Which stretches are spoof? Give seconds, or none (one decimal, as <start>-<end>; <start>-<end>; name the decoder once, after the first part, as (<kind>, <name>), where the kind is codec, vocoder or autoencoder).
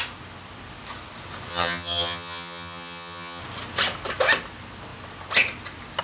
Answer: 1.5-3.4 (vocoder, HiFi-GAN)